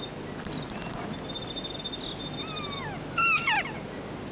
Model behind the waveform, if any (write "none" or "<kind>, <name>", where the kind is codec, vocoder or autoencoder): none